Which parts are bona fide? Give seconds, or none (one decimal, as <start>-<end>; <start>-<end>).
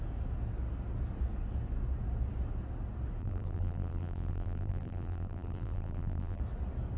0.0-3.2; 6.4-7.0